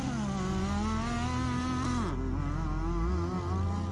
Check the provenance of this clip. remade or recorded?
recorded